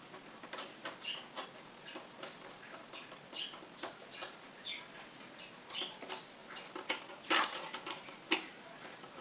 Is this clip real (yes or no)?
yes